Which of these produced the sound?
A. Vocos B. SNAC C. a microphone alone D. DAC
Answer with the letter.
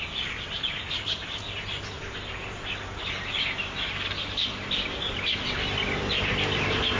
C